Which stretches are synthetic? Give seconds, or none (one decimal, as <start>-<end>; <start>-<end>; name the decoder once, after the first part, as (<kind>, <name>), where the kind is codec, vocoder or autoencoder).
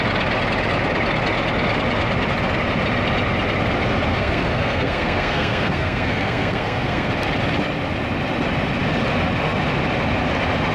4.1-7.1 (codec, SNAC)